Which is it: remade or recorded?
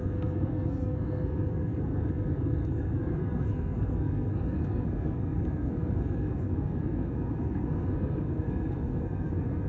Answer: remade